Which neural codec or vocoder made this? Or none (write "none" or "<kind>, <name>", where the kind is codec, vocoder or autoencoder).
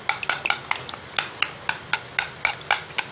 none